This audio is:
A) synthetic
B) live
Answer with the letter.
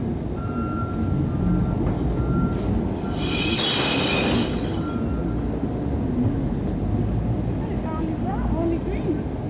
B